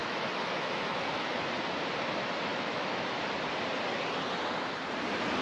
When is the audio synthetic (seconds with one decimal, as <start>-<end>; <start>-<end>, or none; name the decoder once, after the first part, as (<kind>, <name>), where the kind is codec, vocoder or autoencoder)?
0.0-1.5 (autoencoder, DAC-VAE); 2.5-3.2